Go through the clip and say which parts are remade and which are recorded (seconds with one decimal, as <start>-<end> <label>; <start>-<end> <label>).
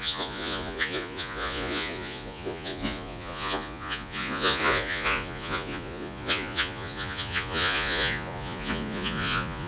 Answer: 0.0-9.7 remade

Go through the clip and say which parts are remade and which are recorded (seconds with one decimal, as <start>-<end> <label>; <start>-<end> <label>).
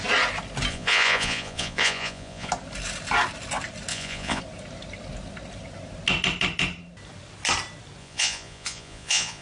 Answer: 0.0-0.7 recorded; 0.7-2.5 remade; 2.5-3.9 recorded; 3.9-4.4 remade; 4.4-8.0 recorded; 8.0-9.4 remade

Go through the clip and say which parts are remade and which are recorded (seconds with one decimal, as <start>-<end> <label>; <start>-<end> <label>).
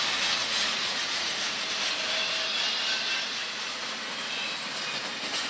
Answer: 0.0-0.4 recorded; 0.4-1.3 remade; 1.3-3.3 recorded; 3.3-4.3 remade; 4.3-5.5 recorded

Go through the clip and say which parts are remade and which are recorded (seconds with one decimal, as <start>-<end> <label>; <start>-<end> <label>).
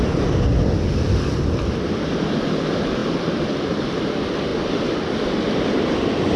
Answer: 0.0-6.4 recorded